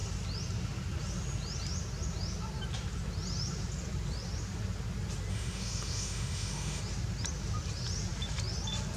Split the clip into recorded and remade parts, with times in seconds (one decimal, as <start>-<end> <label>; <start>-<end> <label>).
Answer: 0.0-5.3 recorded; 5.3-6.8 remade; 6.8-9.0 recorded